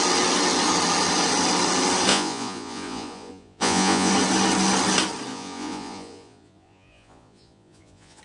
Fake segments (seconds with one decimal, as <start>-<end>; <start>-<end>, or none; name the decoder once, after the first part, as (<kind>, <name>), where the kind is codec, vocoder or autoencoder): 2.1-4.1 (vocoder, Vocos); 5.3-8.2